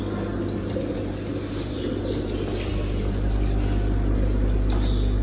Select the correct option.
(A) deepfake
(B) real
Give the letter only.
B